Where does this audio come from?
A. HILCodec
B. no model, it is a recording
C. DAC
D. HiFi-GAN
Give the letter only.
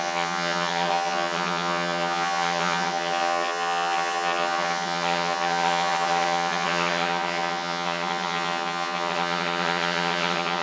D